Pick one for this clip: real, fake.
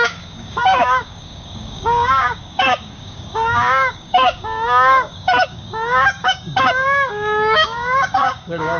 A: fake